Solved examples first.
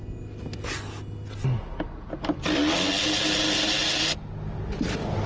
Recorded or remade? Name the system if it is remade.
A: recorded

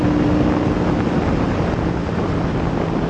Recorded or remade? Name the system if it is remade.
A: recorded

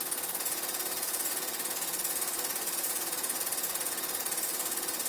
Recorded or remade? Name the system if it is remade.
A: remade, vocoder, Vocos